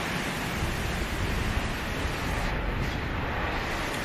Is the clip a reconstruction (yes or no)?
no